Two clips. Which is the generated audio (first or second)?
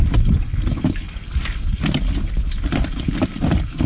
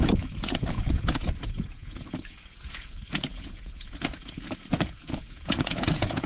second